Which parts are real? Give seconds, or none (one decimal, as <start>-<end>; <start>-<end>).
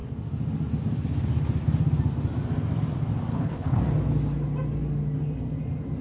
0.0-3.3; 3.8-6.0